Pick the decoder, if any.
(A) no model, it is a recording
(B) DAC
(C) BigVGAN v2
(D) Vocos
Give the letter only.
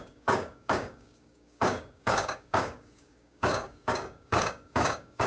B